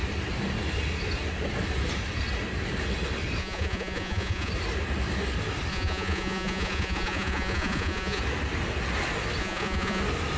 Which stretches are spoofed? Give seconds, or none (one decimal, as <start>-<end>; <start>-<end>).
3.4-4.5; 5.7-8.2; 9.4-10.0